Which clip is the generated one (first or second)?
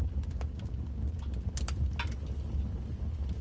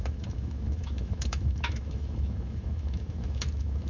second